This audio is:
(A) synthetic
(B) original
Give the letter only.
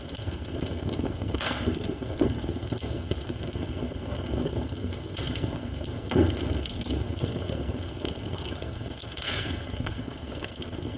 A